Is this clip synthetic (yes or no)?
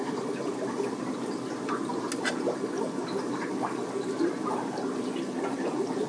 no